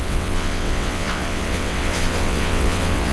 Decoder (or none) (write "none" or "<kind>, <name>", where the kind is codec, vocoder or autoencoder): vocoder, WaveNeXt